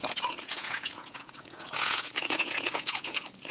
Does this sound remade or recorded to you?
remade